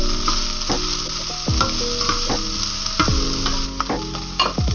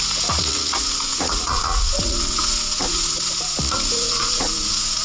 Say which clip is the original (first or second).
first